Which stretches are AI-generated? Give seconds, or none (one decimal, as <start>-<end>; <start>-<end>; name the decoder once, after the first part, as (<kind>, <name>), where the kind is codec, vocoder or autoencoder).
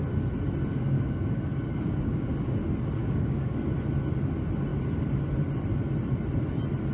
0.7-2.3 (codec, DAC); 3.0-3.7